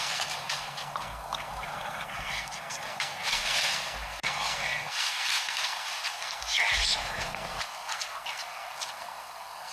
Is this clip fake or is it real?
fake